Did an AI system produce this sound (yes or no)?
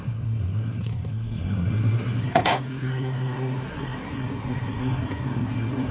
yes